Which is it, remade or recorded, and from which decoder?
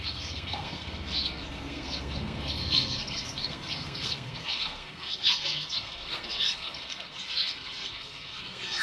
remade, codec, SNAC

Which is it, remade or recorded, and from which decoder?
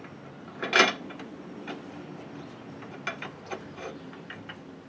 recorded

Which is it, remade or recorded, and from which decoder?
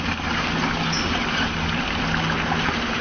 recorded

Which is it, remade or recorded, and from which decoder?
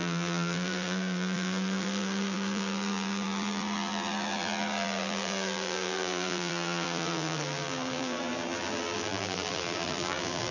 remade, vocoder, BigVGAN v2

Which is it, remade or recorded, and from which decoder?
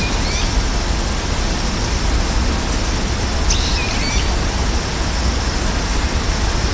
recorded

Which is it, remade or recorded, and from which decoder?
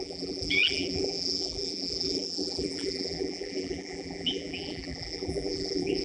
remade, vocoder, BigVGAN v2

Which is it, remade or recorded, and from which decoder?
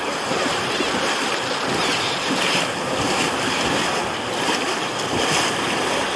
recorded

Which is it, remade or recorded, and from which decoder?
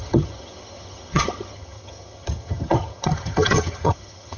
remade, vocoder, HiFi-GAN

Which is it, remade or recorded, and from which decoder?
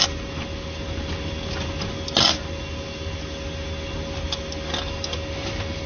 recorded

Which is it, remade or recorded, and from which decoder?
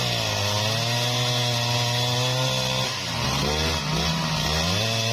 recorded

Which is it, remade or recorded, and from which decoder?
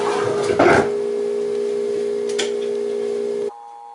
recorded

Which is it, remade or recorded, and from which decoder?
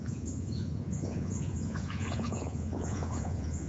remade, vocoder, Vocos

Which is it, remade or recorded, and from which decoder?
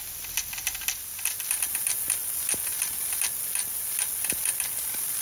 recorded